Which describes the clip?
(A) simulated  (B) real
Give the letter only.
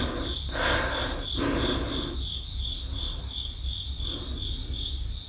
B